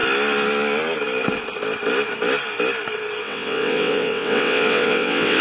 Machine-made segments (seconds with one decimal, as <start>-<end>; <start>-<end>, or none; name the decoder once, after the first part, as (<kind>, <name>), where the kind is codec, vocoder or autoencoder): 3.2-5.4 (vocoder, WaveNeXt)